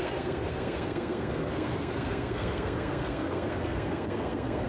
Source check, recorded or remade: remade